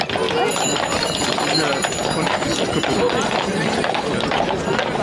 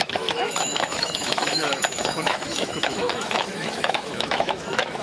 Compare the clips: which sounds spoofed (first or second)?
second